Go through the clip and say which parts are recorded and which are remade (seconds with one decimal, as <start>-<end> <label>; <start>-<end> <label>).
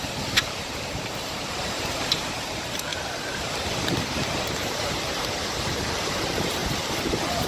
0.0-2.9 remade; 2.9-4.4 recorded; 4.4-6.6 remade; 6.6-7.5 recorded